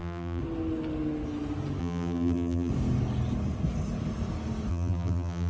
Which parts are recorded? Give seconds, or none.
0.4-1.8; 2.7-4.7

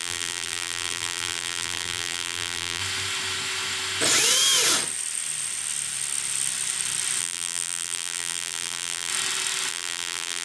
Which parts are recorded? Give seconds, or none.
2.8-7.2; 9.1-9.7